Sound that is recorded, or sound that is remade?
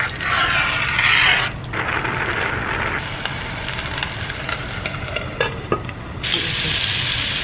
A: recorded